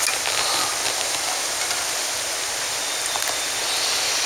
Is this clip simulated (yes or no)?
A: no